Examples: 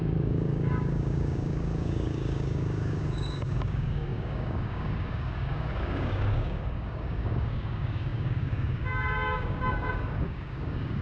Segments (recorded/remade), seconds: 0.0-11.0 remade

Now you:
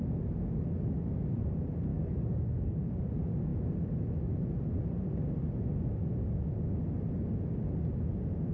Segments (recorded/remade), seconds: 0.0-1.9 recorded; 1.9-2.9 remade; 2.9-8.5 recorded

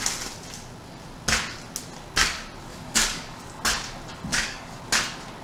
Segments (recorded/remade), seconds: 0.0-2.7 recorded; 2.7-3.4 remade; 3.4-4.3 recorded; 4.3-4.8 remade; 4.8-5.4 recorded